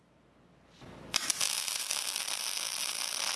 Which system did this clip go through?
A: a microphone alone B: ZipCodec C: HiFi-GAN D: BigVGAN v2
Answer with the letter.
A